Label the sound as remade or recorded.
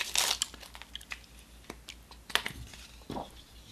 recorded